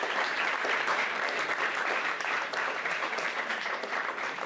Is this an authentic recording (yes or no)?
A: no